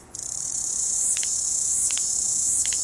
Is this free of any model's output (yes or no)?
no